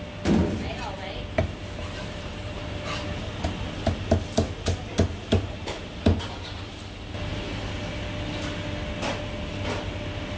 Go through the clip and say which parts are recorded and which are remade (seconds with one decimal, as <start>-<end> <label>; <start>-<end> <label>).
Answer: 0.0-0.7 recorded; 0.7-3.1 remade; 3.1-4.9 recorded; 4.9-5.9 remade; 5.9-10.4 recorded